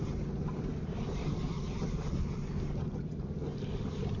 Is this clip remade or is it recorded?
remade